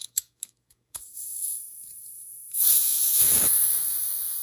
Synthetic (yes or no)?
yes